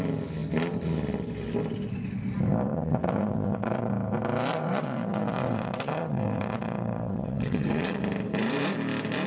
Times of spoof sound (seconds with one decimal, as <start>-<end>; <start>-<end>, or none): 2.7-3.9; 4.5-8.0